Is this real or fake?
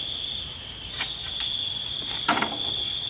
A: real